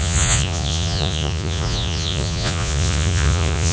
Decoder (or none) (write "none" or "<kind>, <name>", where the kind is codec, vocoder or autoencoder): vocoder, Vocos